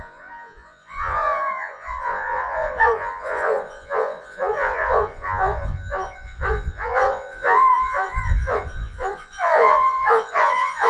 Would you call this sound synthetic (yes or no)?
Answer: yes